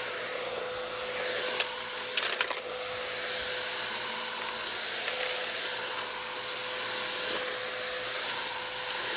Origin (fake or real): real